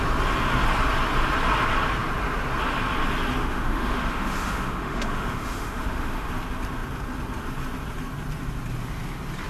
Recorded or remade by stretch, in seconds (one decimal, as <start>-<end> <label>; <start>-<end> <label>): 0.0-3.4 recorded; 3.4-6.3 remade; 6.3-9.5 recorded